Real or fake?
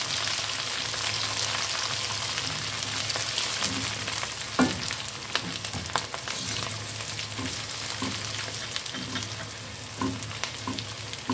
real